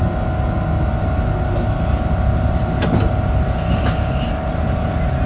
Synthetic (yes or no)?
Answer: no